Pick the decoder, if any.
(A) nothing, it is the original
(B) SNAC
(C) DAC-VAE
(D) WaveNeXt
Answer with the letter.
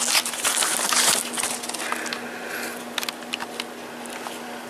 A